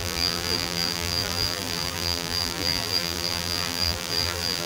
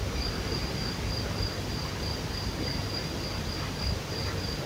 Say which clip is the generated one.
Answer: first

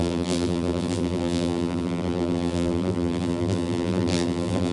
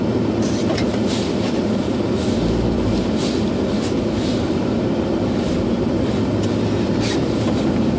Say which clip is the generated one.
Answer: first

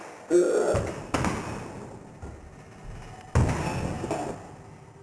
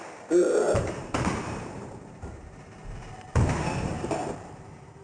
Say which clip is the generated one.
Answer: second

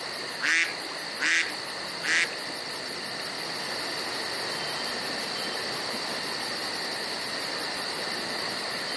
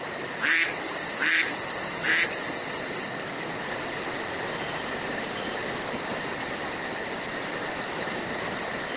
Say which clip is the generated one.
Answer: second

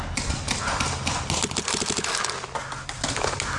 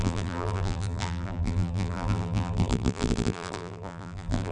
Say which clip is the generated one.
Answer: second